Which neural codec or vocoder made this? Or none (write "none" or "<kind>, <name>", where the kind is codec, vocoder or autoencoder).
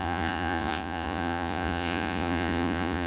vocoder, Vocos